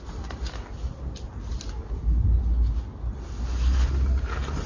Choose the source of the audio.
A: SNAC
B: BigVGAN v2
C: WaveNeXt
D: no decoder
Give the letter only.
D